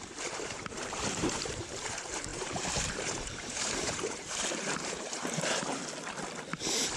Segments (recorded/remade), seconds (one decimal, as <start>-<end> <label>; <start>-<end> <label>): 0.0-5.8 remade; 5.8-7.0 recorded